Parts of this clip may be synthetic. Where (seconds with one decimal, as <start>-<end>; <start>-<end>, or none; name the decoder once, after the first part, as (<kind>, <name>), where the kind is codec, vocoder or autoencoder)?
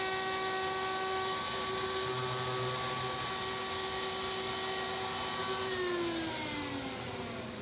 none